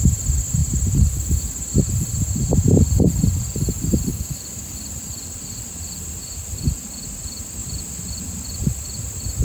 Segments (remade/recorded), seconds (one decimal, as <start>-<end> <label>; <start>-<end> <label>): 0.0-9.4 recorded